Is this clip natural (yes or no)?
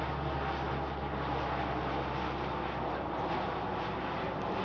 yes